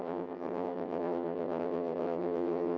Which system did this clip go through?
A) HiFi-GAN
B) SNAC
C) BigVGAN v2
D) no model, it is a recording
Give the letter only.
A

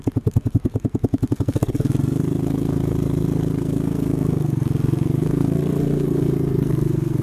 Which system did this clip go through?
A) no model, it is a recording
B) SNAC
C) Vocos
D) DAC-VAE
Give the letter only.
B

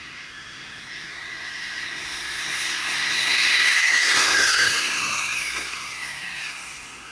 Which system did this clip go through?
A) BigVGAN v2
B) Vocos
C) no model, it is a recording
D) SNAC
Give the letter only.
D